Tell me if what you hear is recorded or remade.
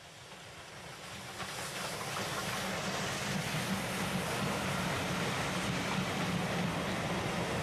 recorded